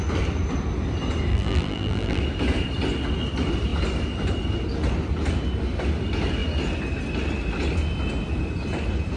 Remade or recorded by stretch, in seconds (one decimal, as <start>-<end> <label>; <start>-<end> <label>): 0.0-1.3 recorded; 1.3-2.2 remade; 2.2-9.2 recorded